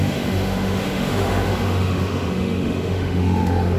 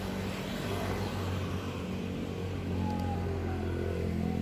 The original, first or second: second